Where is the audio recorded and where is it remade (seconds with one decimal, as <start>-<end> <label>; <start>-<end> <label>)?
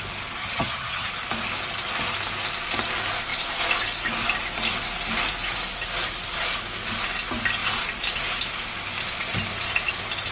0.0-0.4 recorded; 0.4-1.1 remade; 1.1-10.3 recorded